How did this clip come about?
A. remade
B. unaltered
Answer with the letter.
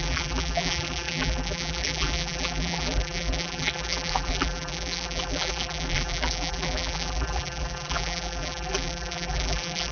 A